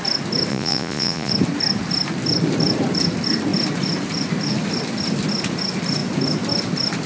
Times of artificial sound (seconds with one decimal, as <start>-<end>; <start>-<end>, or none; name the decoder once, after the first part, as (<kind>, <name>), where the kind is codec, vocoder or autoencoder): 0.5-1.3 (vocoder, Vocos)